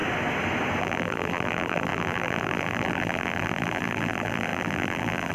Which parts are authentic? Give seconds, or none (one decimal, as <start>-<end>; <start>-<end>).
0.0-0.8